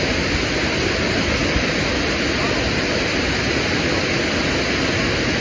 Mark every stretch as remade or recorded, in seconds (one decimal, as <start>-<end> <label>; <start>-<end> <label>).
0.0-5.4 recorded